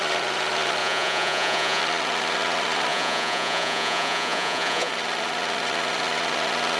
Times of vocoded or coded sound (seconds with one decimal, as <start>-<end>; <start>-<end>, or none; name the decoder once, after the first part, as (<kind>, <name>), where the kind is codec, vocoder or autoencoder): 0.8-1.8 (vocoder, Vocos); 2.9-4.9